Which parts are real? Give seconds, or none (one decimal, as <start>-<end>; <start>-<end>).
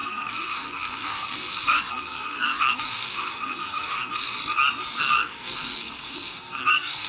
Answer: 4.4-5.0